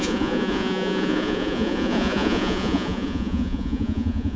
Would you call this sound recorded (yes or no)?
no